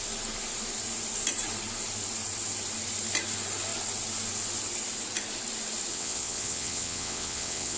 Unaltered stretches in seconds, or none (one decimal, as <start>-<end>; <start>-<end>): 0.0-5.9